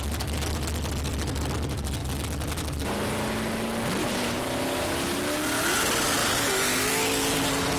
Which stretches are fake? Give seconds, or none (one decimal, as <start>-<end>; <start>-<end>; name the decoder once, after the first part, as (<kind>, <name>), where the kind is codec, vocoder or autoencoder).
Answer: 4.0-5.2 (vocoder, BigVGAN v2)